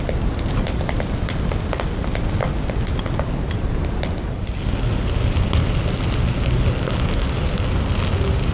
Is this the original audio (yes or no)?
yes